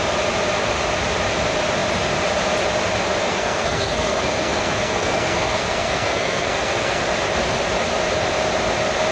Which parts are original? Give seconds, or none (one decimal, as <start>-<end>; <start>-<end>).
0.0-3.2; 7.0-9.1